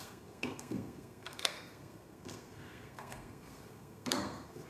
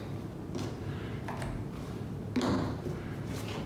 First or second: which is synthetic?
first